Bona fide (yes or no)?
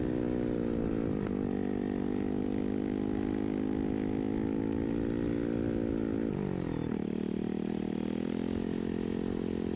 yes